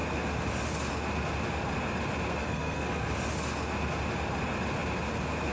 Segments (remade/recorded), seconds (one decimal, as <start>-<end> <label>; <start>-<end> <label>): 0.0-2.3 recorded; 2.3-3.1 remade; 3.1-5.5 recorded